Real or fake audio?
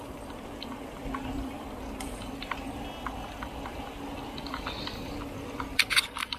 real